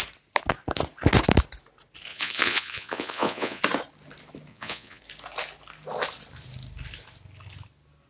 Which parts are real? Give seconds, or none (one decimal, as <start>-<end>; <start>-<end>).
0.0-2.1; 3.6-4.5; 5.0-8.1

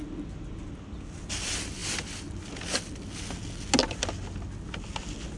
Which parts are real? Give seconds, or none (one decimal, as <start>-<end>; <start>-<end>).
0.0-5.4

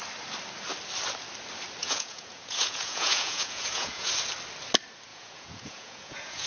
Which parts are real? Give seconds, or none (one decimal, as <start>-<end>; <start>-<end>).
0.0-1.8; 4.1-5.1

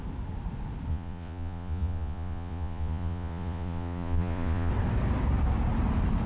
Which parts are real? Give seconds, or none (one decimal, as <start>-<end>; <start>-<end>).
0.0-0.9; 4.7-6.3

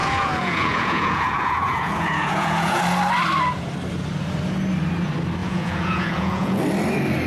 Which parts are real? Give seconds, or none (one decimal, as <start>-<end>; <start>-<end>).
2.8-5.4; 6.6-7.3

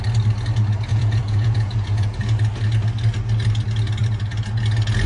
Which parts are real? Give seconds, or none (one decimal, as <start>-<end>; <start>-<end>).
0.0-0.9; 2.2-5.1

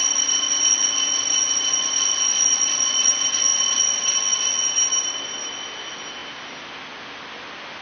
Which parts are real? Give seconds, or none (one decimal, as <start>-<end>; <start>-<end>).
0.0-2.3; 3.1-7.8

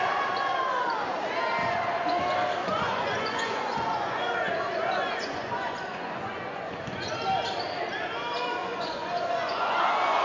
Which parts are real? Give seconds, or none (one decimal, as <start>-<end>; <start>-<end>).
0.0-1.6; 2.2-2.6; 7.1-8.6